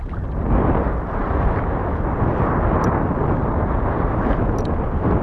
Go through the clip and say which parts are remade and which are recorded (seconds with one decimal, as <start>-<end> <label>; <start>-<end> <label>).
0.0-5.2 recorded

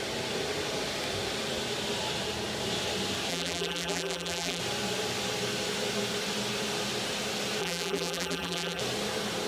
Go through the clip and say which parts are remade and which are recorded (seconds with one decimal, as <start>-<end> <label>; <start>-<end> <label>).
0.0-3.3 recorded; 3.3-4.6 remade; 4.6-7.6 recorded; 7.6-8.8 remade; 8.8-9.5 recorded

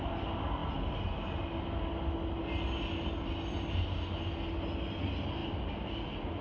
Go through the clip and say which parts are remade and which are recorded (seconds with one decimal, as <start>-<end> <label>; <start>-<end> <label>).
0.0-6.4 recorded